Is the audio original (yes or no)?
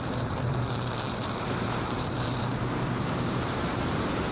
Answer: no